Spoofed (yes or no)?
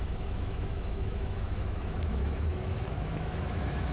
yes